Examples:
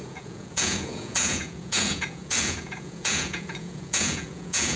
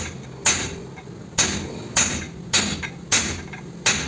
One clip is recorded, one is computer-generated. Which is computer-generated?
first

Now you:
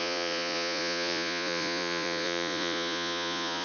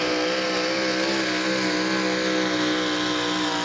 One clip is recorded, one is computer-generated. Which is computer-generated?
first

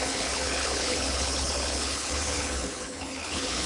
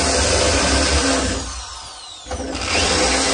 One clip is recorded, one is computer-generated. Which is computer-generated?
first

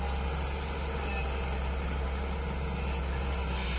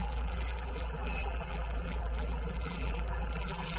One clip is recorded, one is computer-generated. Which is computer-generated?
second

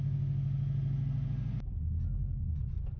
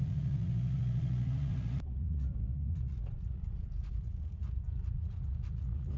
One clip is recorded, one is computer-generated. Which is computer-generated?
second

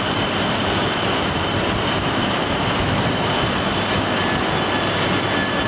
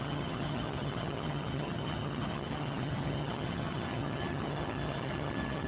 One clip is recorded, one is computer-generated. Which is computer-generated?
second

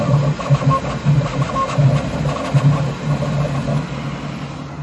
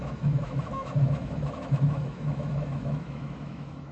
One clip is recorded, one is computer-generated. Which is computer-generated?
second